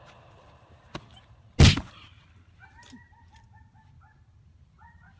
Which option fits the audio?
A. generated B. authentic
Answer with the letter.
B